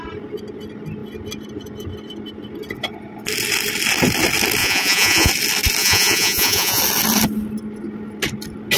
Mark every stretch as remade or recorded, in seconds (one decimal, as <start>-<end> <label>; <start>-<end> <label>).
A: 0.0-4.6 recorded; 4.6-5.3 remade; 5.3-5.8 recorded; 5.8-6.8 remade; 6.8-8.8 recorded